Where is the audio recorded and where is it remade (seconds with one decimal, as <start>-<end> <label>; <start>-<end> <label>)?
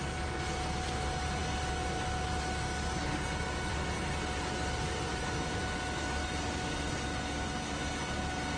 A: 0.0-8.6 recorded